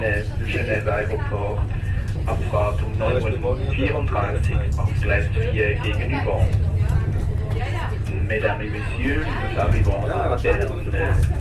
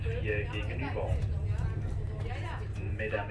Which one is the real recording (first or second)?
second